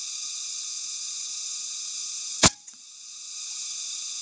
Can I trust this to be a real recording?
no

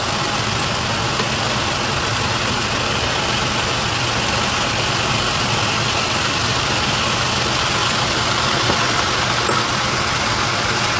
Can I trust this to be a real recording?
yes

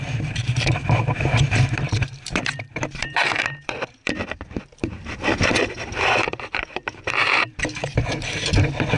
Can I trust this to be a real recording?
no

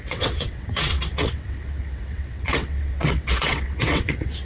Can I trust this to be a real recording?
no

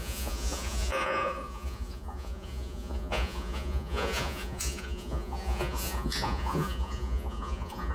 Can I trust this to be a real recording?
no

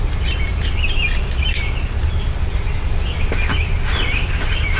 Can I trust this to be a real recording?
yes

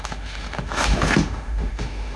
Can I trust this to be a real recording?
no